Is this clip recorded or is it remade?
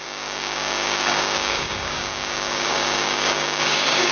remade